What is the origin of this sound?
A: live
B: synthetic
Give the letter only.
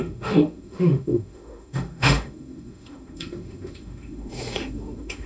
B